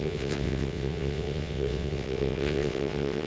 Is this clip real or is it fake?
fake